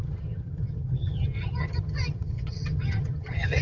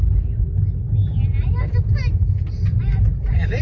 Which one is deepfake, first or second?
first